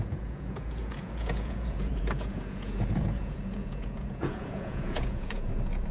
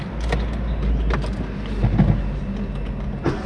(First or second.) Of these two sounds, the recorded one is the second